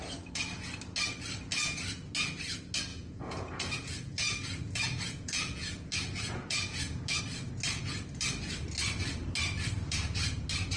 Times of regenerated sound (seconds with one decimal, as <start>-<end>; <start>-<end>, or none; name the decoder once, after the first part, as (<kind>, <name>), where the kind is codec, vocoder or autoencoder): 2.9-7.2 (vocoder, Vocos)